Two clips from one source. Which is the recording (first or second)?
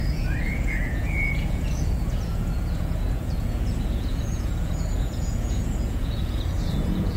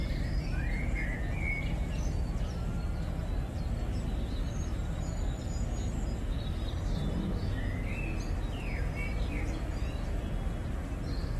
second